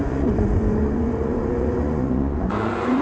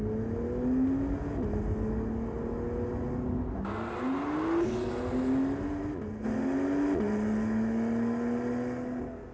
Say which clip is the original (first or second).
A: second